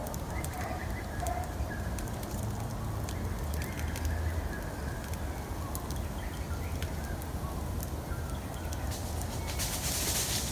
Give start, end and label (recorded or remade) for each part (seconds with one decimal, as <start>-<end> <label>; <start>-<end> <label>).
0.0-2.4 remade; 2.4-10.5 recorded